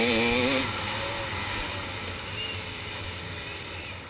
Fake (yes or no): no